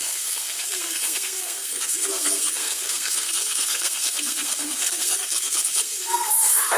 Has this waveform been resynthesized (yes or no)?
yes